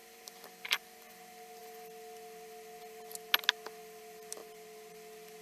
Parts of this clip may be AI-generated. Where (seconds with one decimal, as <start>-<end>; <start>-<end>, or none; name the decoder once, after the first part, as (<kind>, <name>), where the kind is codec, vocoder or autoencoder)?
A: 0.0-1.2 (vocoder, BigVGAN v2)